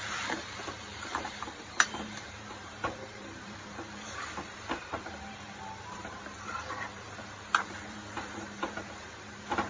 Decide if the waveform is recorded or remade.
remade